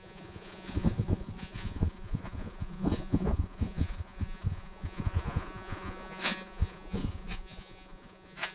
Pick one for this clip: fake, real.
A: fake